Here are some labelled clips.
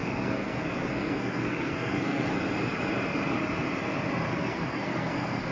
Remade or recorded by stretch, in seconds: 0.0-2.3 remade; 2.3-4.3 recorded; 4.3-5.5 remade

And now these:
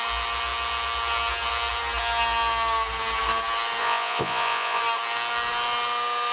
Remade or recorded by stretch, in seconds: 0.0-3.8 recorded; 3.8-4.8 remade; 4.8-6.3 recorded

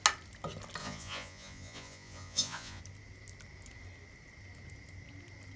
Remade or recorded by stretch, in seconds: 0.0-0.8 recorded; 0.8-2.8 remade; 2.8-5.6 recorded